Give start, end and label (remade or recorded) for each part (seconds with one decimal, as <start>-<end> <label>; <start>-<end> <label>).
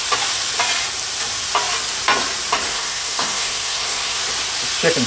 0.0-2.7 recorded; 2.7-4.2 remade; 4.2-5.1 recorded